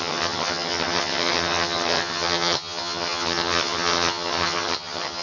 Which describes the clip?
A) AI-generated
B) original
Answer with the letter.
A